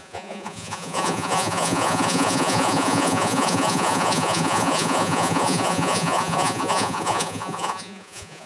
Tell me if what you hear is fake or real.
fake